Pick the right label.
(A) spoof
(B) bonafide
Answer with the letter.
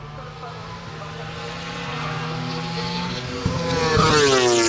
B